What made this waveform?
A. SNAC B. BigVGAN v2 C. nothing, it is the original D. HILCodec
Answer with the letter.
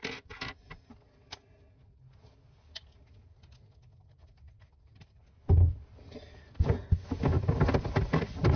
C